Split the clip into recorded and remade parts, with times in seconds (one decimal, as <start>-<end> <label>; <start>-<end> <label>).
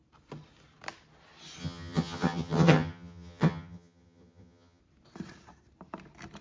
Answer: 0.0-1.6 recorded; 1.6-4.8 remade; 4.8-6.4 recorded